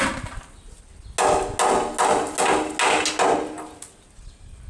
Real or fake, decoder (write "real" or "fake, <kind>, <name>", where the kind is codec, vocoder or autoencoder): real